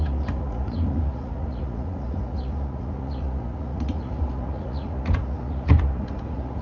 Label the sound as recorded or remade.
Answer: remade